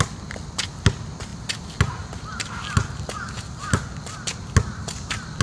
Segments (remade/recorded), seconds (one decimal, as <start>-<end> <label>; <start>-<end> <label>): 0.0-5.4 recorded